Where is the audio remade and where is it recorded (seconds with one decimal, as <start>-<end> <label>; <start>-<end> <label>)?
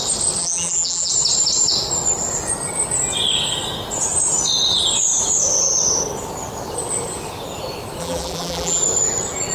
0.0-0.4 recorded; 0.4-1.1 remade; 1.1-8.0 recorded; 8.0-8.8 remade; 8.8-9.5 recorded